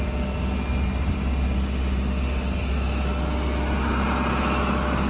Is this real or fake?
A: real